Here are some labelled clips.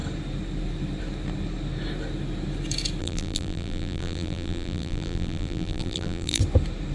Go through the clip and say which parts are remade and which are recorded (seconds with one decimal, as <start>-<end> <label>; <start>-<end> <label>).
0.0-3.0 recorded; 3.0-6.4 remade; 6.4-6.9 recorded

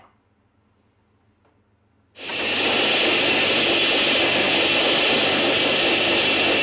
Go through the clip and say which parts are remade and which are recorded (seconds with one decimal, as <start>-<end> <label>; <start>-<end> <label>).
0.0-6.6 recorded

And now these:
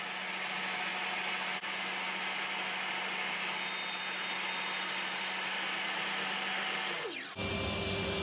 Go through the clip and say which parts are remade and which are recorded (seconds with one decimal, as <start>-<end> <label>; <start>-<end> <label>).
0.0-8.2 recorded

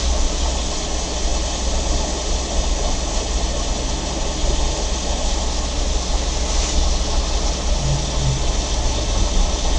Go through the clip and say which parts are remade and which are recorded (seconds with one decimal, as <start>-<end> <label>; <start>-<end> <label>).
0.0-9.8 recorded